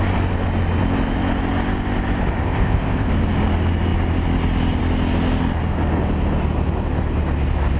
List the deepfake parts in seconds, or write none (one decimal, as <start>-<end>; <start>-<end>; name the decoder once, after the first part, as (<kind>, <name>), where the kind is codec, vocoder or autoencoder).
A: 2.4-3.1 (codec, ZipCodec)